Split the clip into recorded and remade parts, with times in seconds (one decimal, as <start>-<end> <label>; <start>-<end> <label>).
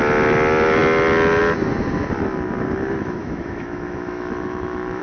0.0-3.2 recorded; 3.2-5.0 remade